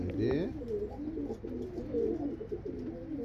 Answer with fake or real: real